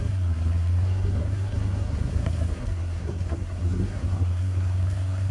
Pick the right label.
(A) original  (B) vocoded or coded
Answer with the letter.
B